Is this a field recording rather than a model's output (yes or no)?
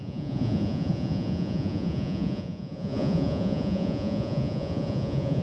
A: no